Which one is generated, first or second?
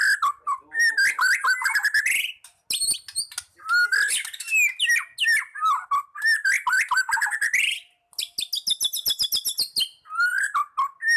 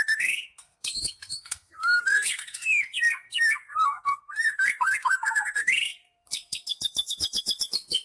second